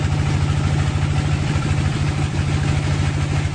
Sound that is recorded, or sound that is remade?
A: recorded